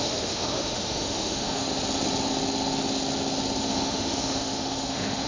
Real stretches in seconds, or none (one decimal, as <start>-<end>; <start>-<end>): 1.7-3.6